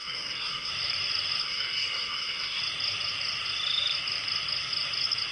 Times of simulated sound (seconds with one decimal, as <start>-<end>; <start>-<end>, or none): 0.0-0.7; 1.4-2.6